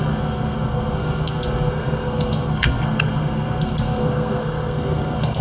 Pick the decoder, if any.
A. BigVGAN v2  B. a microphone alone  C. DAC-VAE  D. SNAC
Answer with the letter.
D